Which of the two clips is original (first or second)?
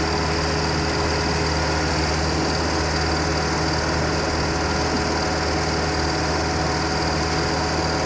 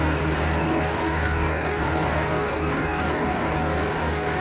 first